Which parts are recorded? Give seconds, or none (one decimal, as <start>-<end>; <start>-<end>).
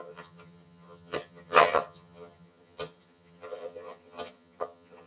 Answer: none